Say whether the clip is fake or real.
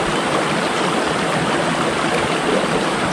real